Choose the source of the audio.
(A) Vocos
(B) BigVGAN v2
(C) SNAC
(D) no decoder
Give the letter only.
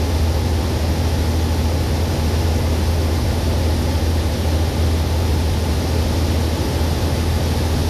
D